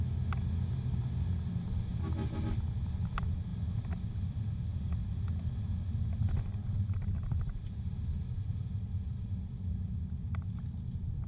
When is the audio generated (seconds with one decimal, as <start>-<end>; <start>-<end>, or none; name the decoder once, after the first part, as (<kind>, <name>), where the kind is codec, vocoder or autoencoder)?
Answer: none